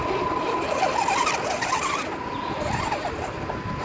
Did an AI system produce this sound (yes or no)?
no